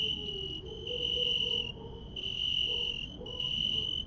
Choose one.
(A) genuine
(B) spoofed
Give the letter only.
A